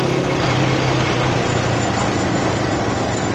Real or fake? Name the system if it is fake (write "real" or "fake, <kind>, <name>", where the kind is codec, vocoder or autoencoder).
real